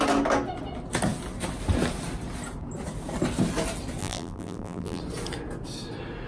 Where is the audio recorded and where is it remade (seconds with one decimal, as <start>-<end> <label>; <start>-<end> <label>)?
0.0-4.0 recorded; 4.0-5.0 remade; 5.0-6.3 recorded